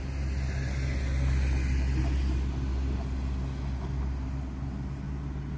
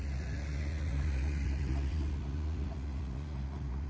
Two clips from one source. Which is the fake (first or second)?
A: second